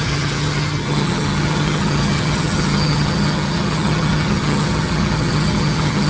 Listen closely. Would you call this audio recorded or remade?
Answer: remade